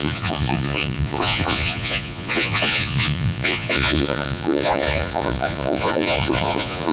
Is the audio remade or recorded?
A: remade